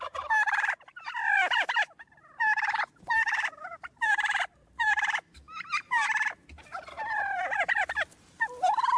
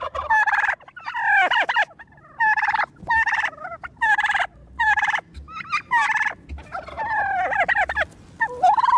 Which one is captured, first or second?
second